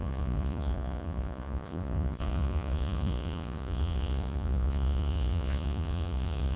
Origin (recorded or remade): remade